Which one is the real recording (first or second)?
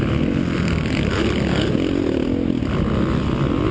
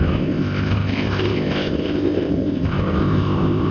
first